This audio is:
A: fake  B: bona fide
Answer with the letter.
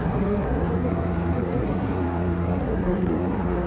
A